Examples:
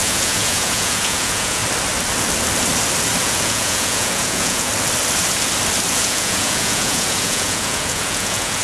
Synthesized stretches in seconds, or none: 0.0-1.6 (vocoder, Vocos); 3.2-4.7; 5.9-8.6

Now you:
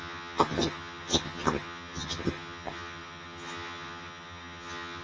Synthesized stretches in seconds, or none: 0.0-5.0 (vocoder, HiFi-GAN)

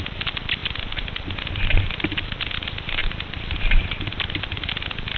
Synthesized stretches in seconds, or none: none

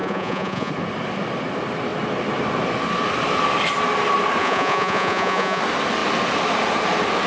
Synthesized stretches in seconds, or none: 0.0-0.7 (vocoder, Vocos); 4.4-5.6

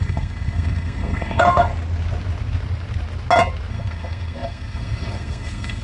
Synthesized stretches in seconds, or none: 0.0-1.7 (codec, SNAC); 3.7-5.8

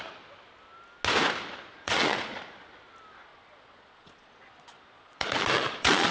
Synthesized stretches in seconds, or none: 1.7-2.7 (vocoder, Vocos); 3.3-6.1

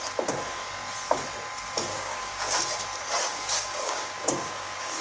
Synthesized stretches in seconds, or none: 1.9-2.6 (codec, DAC); 3.3-5.0

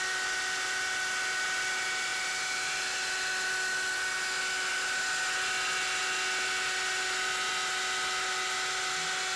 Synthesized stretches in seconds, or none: none